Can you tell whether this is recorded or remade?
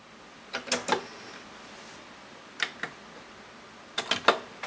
recorded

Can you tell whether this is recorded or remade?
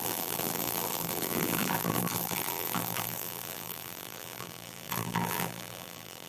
remade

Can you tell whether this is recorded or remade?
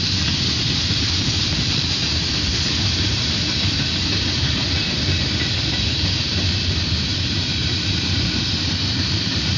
remade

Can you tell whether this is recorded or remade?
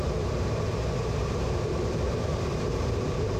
remade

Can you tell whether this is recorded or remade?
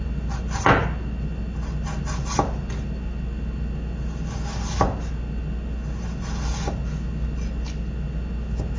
recorded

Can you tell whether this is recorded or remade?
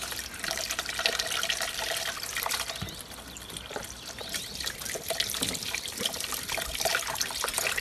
remade